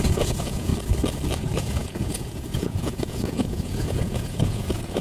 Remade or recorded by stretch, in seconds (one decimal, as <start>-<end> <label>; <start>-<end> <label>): 0.0-0.7 remade; 0.7-1.4 recorded; 1.4-5.0 remade